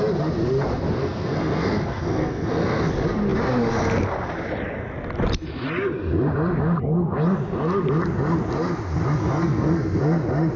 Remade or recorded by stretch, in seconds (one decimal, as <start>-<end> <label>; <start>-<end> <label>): 0.0-1.0 recorded; 1.0-2.9 remade; 2.9-9.2 recorded; 9.2-10.0 remade; 10.0-10.6 recorded